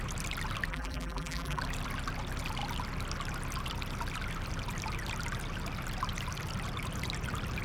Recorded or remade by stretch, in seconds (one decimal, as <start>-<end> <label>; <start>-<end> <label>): 0.0-0.7 recorded; 0.7-1.6 remade; 1.6-7.6 recorded